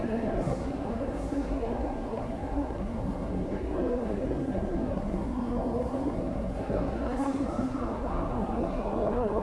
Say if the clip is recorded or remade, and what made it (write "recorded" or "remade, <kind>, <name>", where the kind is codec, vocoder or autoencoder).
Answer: remade, codec, SNAC